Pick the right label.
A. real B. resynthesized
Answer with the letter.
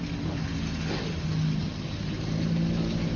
A